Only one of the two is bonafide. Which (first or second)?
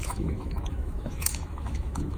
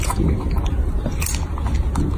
second